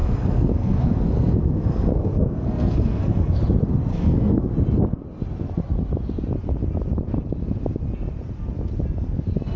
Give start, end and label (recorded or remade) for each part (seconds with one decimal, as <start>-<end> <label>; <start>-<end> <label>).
0.0-3.4 remade; 3.4-3.9 recorded; 3.9-4.5 remade; 4.5-9.6 recorded